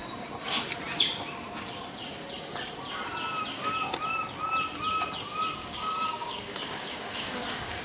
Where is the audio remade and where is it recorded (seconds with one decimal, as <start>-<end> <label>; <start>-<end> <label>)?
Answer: 0.0-5.6 recorded; 5.6-7.8 remade